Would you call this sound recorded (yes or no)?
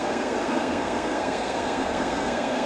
no